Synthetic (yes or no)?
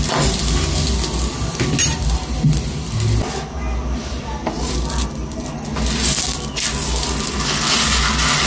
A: no